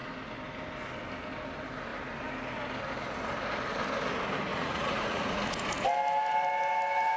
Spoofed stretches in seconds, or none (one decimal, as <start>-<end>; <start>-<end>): 4.5-5.9

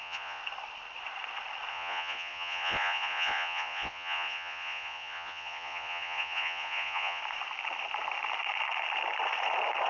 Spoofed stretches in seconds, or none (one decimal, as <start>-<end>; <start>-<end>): 0.0-0.4; 1.7-7.2

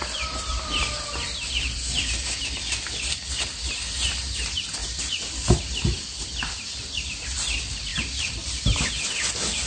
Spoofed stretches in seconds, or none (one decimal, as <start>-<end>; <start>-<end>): 7.9-9.0

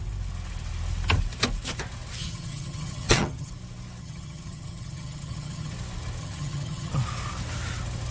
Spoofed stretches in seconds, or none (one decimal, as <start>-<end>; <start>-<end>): 2.2-3.5; 4.0-5.7; 6.2-6.9

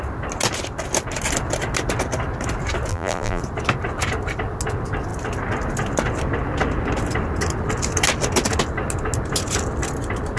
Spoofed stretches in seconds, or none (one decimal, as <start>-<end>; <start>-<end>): 2.9-3.4